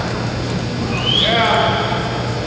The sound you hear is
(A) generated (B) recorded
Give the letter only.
B